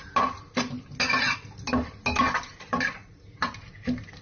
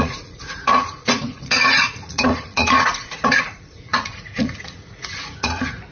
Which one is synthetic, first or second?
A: second